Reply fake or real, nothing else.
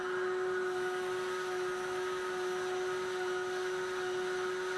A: real